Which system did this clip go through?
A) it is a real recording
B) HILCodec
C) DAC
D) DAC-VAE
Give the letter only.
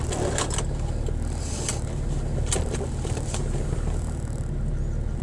A